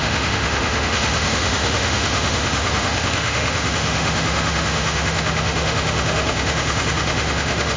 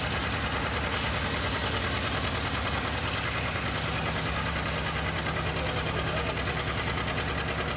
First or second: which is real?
second